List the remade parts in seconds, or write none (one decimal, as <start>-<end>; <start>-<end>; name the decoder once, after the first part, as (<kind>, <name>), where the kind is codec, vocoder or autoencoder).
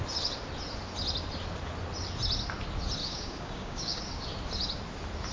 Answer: 3.0-4.0 (codec, DAC)